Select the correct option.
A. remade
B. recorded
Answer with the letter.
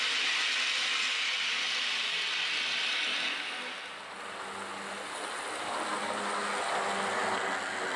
B